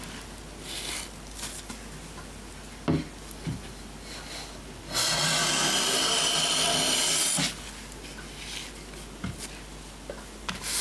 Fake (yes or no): no